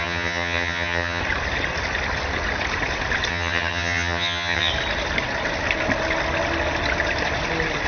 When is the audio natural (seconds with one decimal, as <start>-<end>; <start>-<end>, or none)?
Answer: 1.2-3.3; 4.7-7.9